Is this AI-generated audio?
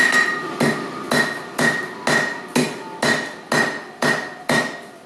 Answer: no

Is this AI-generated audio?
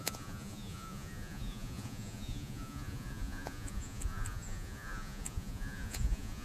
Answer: yes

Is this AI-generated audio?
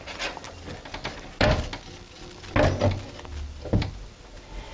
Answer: no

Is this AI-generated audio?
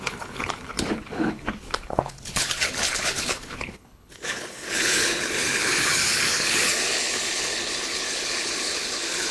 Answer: yes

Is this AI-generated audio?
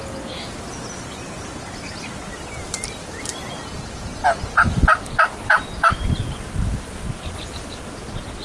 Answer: no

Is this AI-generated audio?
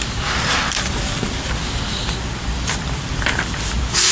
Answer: no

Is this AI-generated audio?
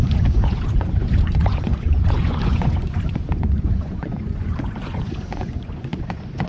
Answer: yes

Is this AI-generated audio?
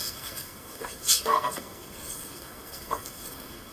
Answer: yes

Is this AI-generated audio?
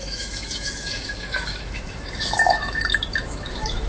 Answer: yes